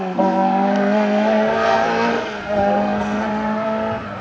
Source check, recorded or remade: remade